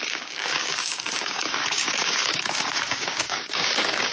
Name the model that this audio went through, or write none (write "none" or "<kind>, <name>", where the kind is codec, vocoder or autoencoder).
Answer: codec, DAC